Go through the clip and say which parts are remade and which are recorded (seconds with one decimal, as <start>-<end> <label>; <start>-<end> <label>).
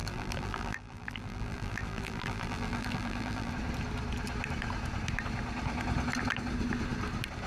0.0-3.5 remade; 3.5-7.5 recorded